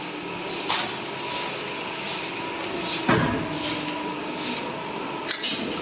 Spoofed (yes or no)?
no